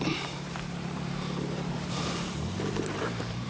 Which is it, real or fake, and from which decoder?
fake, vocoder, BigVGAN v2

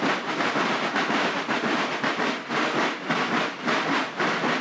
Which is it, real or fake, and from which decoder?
real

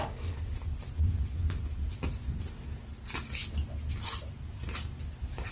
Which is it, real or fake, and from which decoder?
real